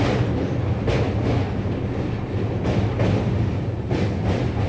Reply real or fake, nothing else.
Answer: real